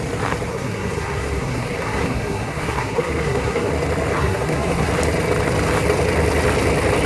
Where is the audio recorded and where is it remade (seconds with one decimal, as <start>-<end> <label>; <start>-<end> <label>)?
0.0-0.5 recorded; 0.5-3.7 remade; 3.7-4.2 recorded; 4.2-4.9 remade; 4.9-7.1 recorded